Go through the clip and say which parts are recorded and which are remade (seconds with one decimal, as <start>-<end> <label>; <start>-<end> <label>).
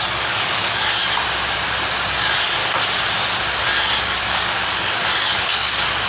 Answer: 0.0-1.0 remade; 1.0-2.1 recorded; 2.1-2.6 remade; 2.6-4.0 recorded; 4.0-6.1 remade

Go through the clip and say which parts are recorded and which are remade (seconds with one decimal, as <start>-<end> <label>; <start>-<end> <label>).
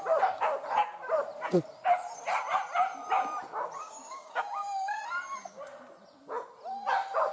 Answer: 0.0-3.8 recorded; 3.8-5.0 remade; 5.0-7.3 recorded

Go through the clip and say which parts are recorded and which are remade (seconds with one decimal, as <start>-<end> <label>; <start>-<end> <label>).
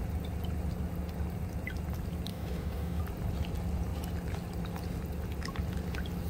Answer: 0.0-2.3 recorded; 2.3-3.0 remade; 3.0-6.3 recorded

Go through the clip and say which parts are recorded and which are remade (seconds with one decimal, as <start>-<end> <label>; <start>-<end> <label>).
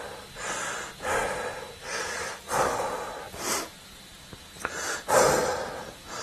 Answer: 0.0-1.8 recorded; 1.8-2.8 remade; 2.8-6.2 recorded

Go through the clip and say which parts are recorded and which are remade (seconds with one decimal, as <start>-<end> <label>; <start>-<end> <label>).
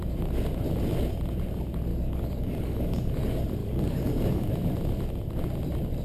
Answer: 0.0-1.9 recorded; 1.9-3.1 remade; 3.1-3.6 recorded; 3.6-4.5 remade; 4.5-6.0 recorded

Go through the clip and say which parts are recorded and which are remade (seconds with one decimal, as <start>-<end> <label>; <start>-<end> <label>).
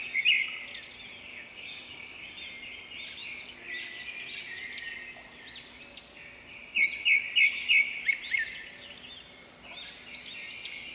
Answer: 0.0-1.3 recorded; 1.3-2.3 remade; 2.3-10.9 recorded